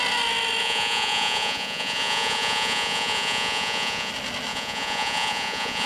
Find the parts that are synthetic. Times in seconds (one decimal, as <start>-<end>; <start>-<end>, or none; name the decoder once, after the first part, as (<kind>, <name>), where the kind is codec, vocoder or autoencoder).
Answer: 0.6-4.1 (vocoder, Vocos); 4.5-5.9